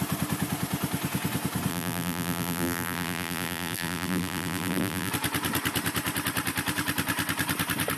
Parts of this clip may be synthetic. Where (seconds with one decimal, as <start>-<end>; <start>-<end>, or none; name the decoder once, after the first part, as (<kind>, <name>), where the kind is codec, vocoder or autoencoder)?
1.7-5.1 (vocoder, BigVGAN v2)

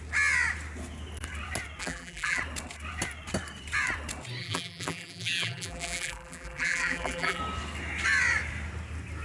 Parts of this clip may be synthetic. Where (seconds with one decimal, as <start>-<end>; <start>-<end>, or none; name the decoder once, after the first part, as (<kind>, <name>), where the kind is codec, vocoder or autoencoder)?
1.8-2.4 (vocoder, BigVGAN v2); 4.4-7.4

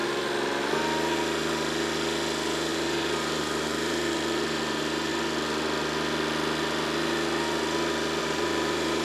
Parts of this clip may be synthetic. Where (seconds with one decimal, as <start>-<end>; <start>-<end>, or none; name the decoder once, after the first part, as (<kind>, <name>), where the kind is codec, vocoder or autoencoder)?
2.7-5.1 (vocoder, BigVGAN v2); 8.2-9.0

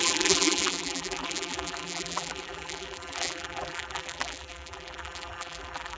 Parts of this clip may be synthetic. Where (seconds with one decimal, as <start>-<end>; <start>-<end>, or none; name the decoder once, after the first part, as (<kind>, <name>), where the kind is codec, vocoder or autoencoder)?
0.0-6.0 (vocoder, BigVGAN v2)

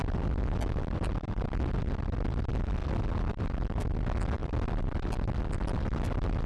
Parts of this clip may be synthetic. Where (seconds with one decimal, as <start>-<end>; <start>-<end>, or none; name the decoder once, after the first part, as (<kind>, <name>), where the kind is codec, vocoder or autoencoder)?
4.4-5.8 (vocoder, BigVGAN v2)